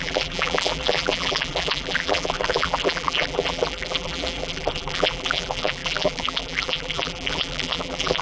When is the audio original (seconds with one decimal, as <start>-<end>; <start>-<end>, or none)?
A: none